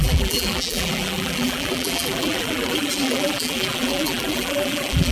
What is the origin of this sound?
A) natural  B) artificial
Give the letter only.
B